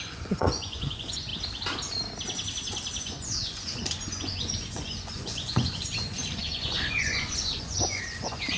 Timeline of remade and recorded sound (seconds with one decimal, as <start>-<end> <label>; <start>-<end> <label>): 0.0-1.3 remade; 1.3-3.0 recorded; 3.0-8.6 remade